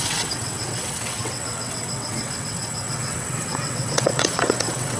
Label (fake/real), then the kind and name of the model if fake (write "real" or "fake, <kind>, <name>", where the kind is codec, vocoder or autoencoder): fake, vocoder, WaveNeXt